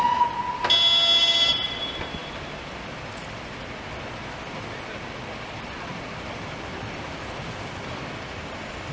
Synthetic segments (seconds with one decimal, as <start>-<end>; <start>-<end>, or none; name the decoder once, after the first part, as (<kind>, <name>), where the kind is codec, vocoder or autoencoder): none